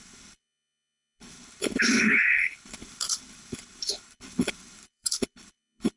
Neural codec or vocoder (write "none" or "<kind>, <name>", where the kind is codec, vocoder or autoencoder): codec, HILCodec